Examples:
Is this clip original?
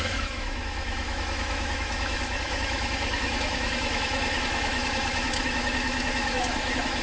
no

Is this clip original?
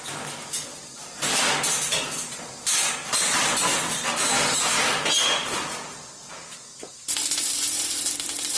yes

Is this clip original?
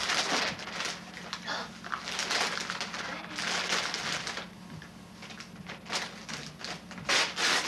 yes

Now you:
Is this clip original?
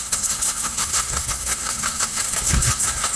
no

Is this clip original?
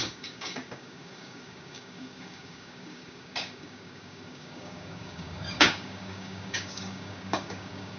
no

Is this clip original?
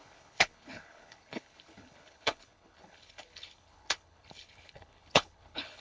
no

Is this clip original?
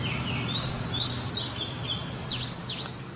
yes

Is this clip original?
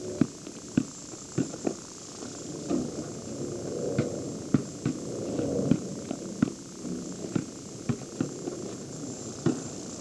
yes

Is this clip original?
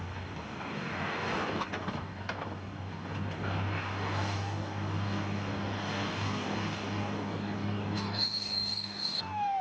no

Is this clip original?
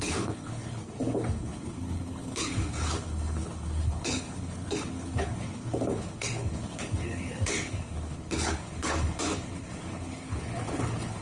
no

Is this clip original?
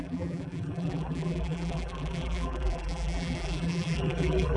no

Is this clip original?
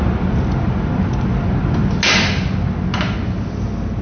yes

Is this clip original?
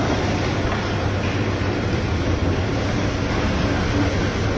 yes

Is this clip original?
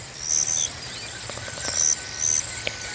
yes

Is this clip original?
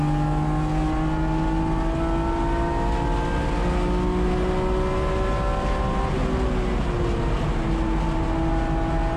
yes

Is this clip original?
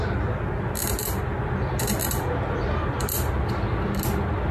yes